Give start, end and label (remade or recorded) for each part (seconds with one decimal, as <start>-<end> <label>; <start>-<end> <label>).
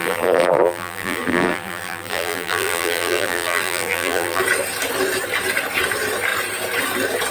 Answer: 0.0-4.4 remade; 4.4-7.3 recorded